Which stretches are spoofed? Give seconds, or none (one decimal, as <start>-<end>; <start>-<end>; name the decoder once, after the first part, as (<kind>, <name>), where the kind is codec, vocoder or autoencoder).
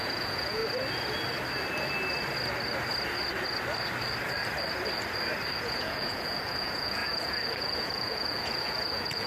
0.0-0.6 (vocoder, Vocos); 5.6-9.3